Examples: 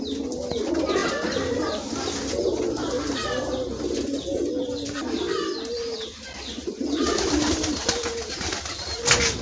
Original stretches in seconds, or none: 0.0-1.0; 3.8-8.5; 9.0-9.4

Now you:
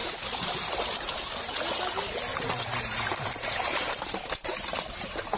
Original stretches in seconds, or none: 1.8-2.3

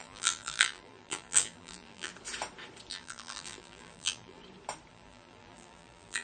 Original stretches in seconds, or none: 2.1-2.9; 4.4-4.9

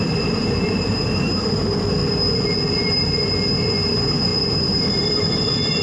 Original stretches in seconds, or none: 2.0-2.7

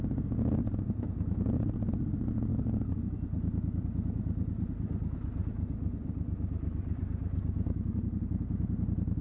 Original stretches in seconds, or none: 0.0-2.5; 3.0-3.8; 7.2-9.2

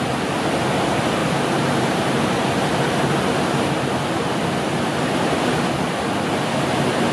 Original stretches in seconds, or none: 0.0-1.2; 2.1-7.1

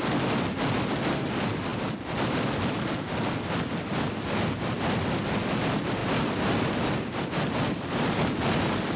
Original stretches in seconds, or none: 0.0-6.0; 8.2-9.0